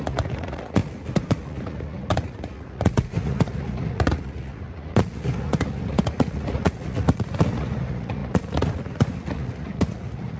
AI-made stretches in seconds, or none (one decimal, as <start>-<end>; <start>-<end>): 0.0-10.4